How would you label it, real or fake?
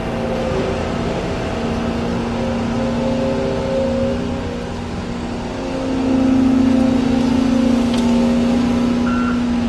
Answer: real